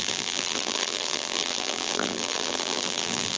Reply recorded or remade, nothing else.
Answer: remade